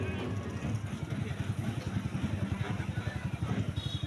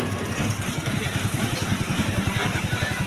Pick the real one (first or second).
first